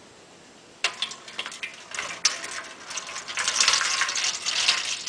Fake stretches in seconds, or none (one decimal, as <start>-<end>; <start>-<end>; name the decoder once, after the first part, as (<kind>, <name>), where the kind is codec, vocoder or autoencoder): 3.3-3.9 (vocoder, BigVGAN v2)

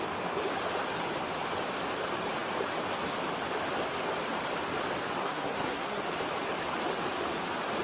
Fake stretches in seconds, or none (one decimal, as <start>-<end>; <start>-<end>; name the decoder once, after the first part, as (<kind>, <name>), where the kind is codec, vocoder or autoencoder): 5.2-6.0 (codec, SNAC)

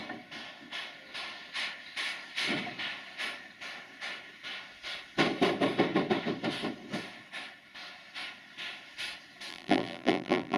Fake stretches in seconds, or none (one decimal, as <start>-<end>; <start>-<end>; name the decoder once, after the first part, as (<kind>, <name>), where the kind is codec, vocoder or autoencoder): 9.5-10.6 (vocoder, BigVGAN v2)

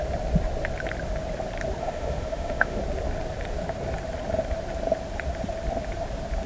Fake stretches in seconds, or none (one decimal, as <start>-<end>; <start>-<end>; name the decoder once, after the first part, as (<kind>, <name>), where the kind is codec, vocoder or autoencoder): 1.8-2.8 (autoencoder, DAC-VAE)

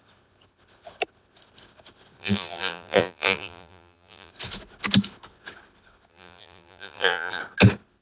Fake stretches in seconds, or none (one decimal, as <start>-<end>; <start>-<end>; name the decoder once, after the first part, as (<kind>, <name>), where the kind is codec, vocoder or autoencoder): 2.2-4.3 (vocoder, BigVGAN v2); 6.1-7.4

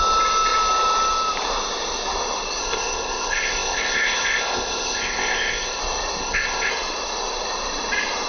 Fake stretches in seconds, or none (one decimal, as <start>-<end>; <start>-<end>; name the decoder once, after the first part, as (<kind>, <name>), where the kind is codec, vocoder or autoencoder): 2.6-5.8 (codec, ZipCodec); 6.2-6.7

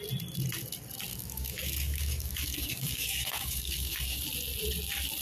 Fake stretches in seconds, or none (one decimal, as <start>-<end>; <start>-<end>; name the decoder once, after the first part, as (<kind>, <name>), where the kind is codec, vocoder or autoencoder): 1.1-4.2 (codec, DAC)